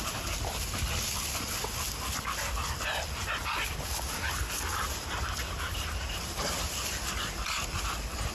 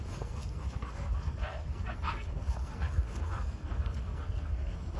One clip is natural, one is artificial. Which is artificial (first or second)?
second